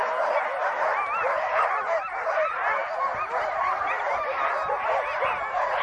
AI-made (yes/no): no